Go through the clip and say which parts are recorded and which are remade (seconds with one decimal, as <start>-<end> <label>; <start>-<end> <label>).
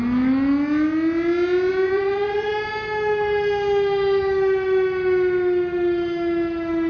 0.0-1.7 recorded; 1.7-2.5 remade; 2.5-6.9 recorded